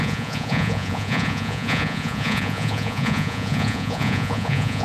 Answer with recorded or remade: remade